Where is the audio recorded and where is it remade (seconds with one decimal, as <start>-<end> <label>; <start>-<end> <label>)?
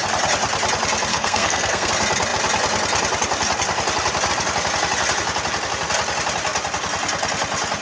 0.0-1.1 recorded; 1.1-1.9 remade; 1.9-7.8 recorded